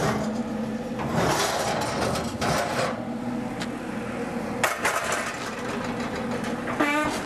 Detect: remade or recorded recorded